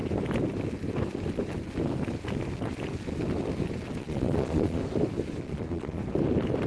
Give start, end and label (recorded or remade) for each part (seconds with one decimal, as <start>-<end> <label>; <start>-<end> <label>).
0.0-4.0 recorded; 4.0-4.8 remade; 4.8-5.4 recorded; 5.4-6.0 remade; 6.0-6.7 recorded